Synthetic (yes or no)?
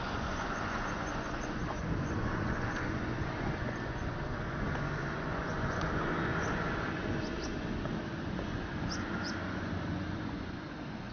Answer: yes